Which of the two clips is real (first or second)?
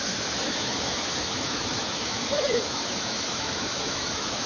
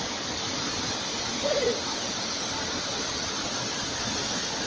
second